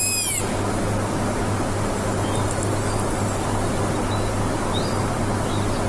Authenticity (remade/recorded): recorded